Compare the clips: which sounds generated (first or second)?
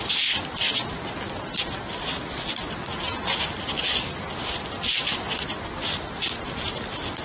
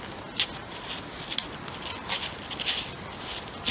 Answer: first